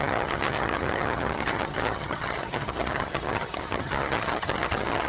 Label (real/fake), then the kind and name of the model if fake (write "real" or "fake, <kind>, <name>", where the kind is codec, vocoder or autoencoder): fake, vocoder, HiFi-GAN